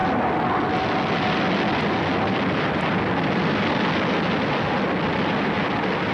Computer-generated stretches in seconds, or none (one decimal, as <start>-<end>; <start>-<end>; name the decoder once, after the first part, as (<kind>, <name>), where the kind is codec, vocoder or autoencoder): none